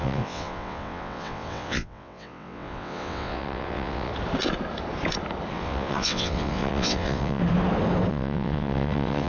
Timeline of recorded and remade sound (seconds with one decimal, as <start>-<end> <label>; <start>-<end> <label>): 0.0-4.1 remade; 4.1-5.5 recorded; 5.5-7.4 remade; 7.4-8.1 recorded; 8.1-9.3 remade